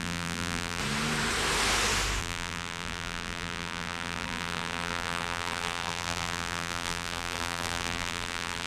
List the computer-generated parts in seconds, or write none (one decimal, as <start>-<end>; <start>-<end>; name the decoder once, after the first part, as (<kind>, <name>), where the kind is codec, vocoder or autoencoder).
0.0-0.8 (vocoder, BigVGAN v2); 2.2-8.7